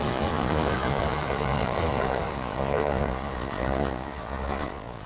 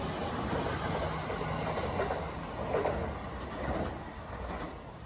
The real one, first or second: second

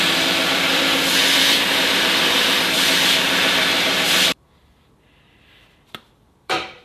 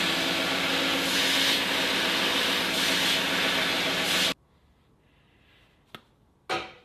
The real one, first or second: second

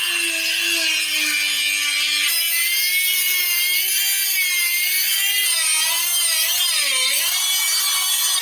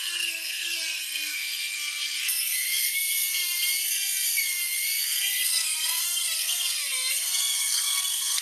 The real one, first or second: first